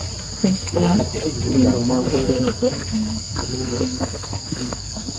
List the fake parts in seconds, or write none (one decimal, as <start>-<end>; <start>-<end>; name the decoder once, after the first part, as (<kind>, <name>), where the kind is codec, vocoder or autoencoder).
0.4-1.0 (codec, SNAC); 1.8-5.2